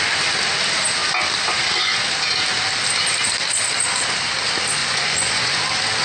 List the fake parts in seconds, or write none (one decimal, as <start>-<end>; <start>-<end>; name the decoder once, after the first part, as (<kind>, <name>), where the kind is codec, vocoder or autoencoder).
4.8-5.6 (vocoder, Vocos)